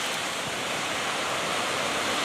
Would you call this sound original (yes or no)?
no